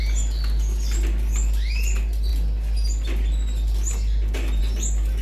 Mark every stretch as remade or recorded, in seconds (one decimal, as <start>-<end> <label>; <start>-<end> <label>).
0.0-5.2 recorded